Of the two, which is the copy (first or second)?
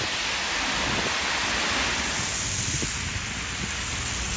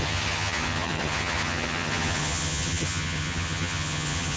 second